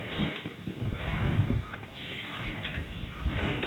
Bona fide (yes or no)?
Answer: no